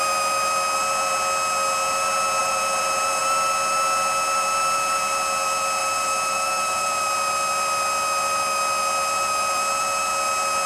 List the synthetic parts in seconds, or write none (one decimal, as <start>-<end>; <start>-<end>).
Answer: 2.4-3.2; 5.8-6.9